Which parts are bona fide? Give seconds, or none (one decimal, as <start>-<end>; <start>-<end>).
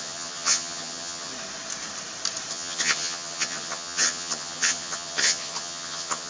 1.3-2.5